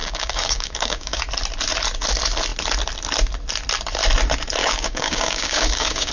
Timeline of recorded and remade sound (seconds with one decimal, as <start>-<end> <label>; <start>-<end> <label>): 0.0-1.2 remade; 1.2-4.6 recorded; 4.6-6.1 remade